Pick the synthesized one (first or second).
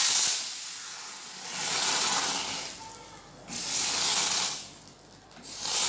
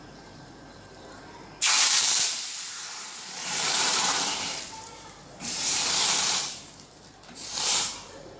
second